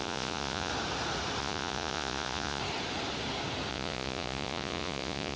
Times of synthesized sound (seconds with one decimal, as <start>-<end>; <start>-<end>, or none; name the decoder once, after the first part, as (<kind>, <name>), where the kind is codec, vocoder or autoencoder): 0.0-0.7 (vocoder, Vocos); 1.4-2.6; 3.7-5.4